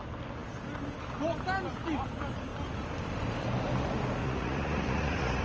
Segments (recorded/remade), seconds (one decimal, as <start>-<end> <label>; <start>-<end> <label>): 0.0-4.2 recorded; 4.2-5.4 remade